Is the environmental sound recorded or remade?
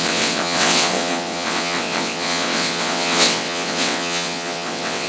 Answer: remade